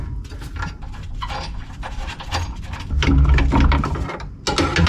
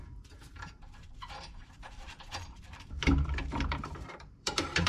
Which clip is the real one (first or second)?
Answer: first